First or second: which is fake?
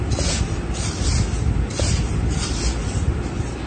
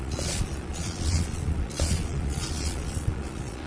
second